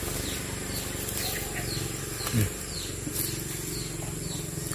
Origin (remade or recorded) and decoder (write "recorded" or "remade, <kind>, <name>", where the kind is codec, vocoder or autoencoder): recorded